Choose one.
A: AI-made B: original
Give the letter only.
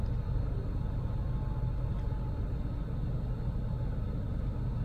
B